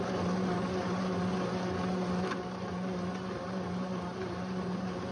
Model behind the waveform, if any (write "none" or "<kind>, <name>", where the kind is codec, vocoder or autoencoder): none